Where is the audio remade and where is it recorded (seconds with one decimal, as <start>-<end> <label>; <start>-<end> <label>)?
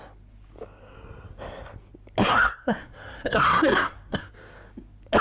0.0-2.3 recorded; 2.3-4.3 remade; 4.3-5.2 recorded